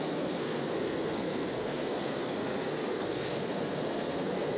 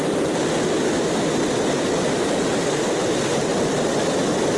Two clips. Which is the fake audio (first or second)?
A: first